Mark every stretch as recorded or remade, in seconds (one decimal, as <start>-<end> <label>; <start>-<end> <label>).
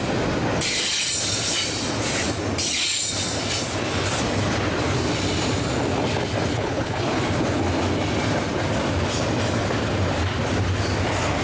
0.0-6.5 recorded; 6.5-7.2 remade; 7.2-11.4 recorded